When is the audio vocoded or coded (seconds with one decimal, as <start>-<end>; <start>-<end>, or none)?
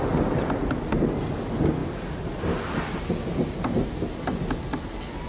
none